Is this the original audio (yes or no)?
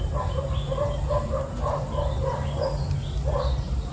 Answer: yes